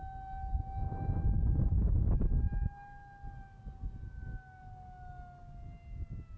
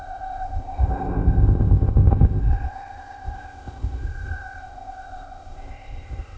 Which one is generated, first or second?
second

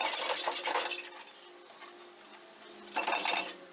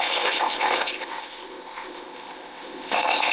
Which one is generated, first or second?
second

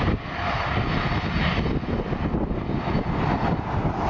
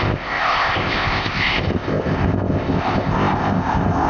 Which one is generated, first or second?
second